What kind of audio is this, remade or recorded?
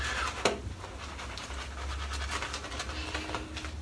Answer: recorded